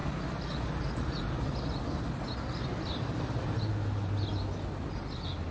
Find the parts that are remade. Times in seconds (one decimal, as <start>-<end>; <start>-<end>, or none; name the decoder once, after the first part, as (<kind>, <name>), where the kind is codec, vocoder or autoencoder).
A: none